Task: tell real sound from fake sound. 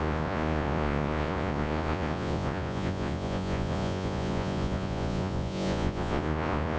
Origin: fake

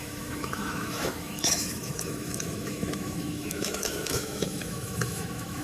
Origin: fake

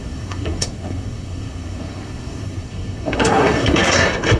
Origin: fake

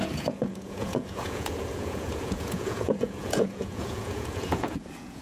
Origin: fake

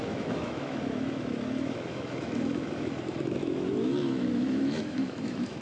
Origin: fake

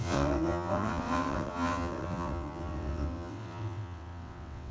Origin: fake